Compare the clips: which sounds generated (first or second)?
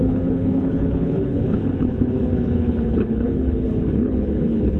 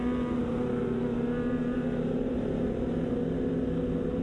first